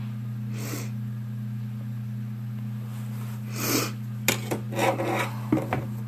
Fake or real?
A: real